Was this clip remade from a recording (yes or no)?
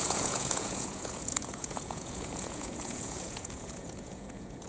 yes